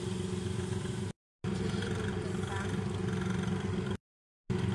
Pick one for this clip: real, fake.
real